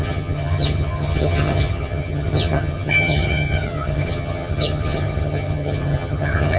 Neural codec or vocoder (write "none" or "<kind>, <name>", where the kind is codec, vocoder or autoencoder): vocoder, HiFi-GAN